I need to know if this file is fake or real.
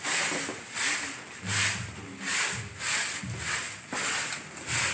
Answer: real